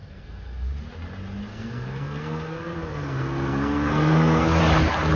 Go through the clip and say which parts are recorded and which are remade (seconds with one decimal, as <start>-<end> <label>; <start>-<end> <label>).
0.0-0.8 remade; 0.8-1.5 recorded; 1.5-4.6 remade; 4.6-5.2 recorded